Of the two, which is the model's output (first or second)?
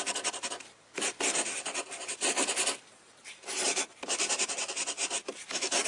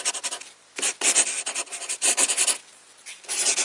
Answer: first